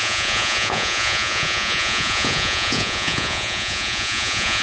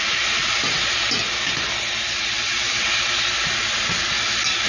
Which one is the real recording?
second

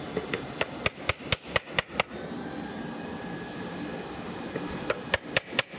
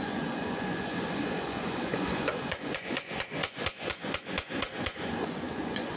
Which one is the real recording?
first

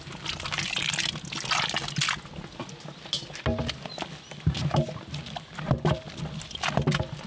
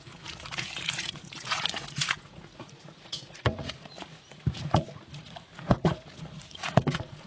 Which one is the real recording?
first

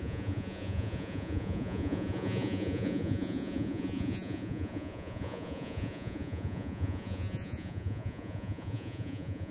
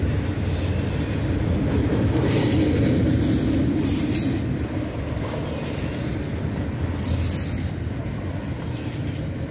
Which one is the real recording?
second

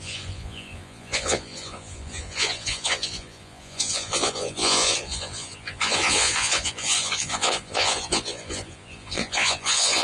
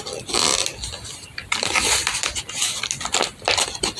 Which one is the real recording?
second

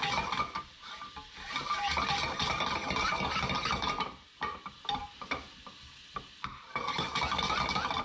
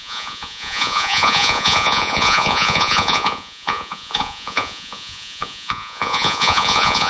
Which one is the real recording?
first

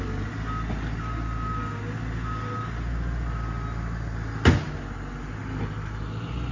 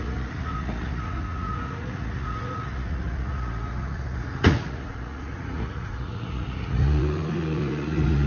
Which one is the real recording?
first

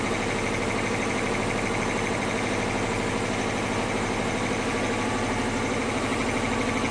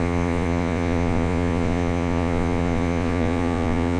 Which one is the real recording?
first